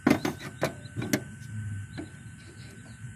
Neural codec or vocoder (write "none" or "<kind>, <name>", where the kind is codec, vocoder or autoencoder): none